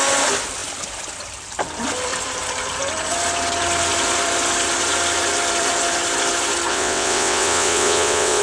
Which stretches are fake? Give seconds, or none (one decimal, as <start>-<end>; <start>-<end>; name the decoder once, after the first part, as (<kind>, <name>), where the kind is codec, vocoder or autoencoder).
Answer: 6.7-8.4 (vocoder, WaveNeXt)